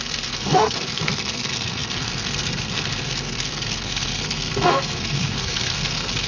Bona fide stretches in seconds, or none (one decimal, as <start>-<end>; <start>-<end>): none